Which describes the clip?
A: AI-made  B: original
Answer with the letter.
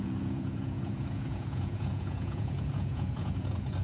A